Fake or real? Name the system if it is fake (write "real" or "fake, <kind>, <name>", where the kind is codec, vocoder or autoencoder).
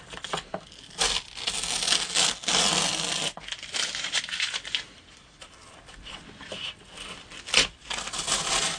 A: real